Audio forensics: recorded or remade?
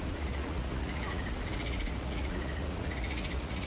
remade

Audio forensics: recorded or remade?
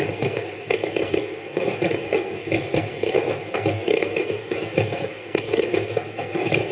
remade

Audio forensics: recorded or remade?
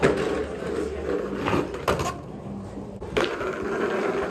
recorded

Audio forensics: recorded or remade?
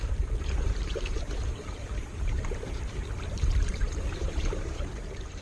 remade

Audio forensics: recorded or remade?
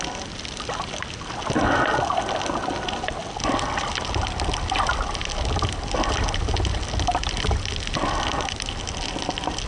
recorded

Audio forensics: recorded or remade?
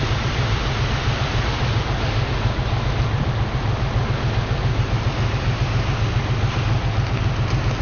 recorded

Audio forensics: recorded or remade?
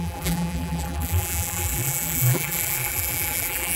remade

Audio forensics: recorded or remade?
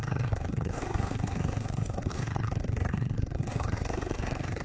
remade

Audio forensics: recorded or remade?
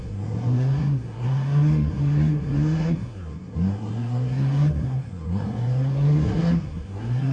remade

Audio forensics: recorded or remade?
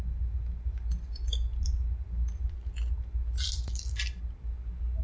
recorded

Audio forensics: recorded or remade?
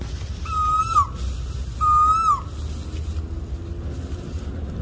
recorded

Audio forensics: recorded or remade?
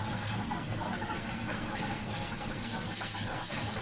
remade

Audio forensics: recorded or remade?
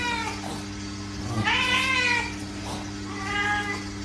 recorded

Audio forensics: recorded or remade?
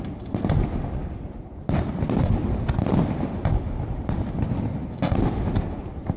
recorded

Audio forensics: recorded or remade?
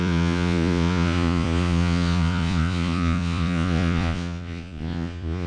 remade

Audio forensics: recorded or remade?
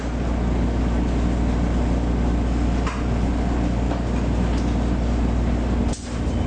recorded